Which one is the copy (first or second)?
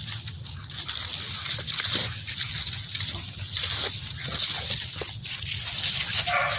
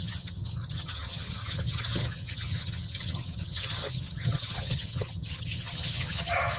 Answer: second